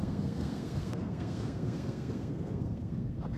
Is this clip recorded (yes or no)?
no